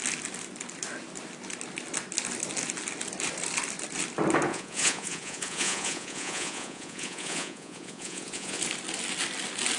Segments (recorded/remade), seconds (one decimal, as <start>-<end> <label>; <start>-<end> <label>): 0.0-4.5 recorded; 4.5-8.6 remade; 8.6-9.8 recorded